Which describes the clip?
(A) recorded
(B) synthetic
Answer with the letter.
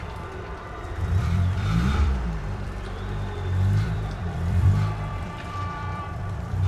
B